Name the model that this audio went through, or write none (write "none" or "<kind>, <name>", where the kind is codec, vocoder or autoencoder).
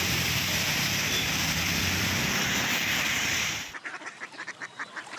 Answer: vocoder, BigVGAN v2